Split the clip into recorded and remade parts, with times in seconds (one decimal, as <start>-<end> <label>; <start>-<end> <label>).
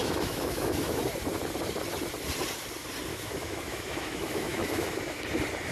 0.0-1.0 remade; 1.0-3.1 recorded; 3.1-5.2 remade; 5.2-5.7 recorded